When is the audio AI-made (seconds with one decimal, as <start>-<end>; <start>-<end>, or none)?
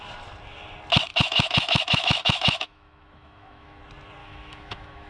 1.1-3.8; 4.2-5.1